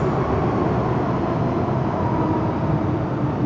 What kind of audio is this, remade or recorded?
recorded